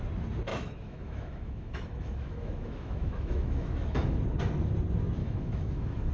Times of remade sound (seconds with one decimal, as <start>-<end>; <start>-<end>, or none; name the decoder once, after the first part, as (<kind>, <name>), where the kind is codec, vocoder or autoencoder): 0.5-4.2 (autoencoder, DAC-VAE); 5.2-6.1